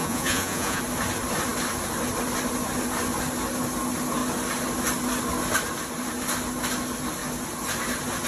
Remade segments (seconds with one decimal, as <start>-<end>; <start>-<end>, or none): 0.0-0.8